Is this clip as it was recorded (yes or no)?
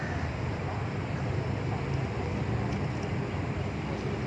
no